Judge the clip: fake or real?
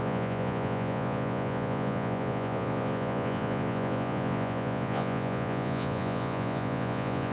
fake